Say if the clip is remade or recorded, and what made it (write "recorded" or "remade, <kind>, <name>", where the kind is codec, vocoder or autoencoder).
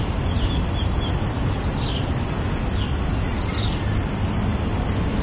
recorded